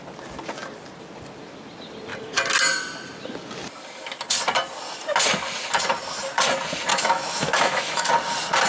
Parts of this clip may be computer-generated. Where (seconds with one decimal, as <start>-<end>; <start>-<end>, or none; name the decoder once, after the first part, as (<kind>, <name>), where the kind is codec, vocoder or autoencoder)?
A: 6.9-8.1 (autoencoder, DAC-VAE)